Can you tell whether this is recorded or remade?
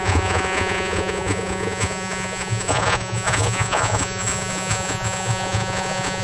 remade